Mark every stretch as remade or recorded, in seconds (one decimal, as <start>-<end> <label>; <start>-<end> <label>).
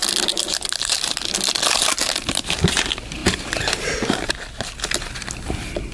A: 0.0-3.2 recorded; 3.2-4.3 remade; 4.3-5.9 recorded